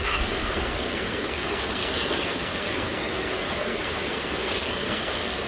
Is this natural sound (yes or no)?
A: no